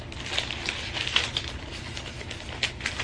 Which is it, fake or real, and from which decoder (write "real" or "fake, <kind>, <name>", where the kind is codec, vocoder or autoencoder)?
real